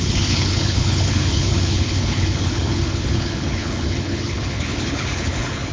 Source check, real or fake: fake